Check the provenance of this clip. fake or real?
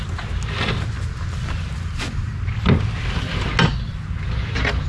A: real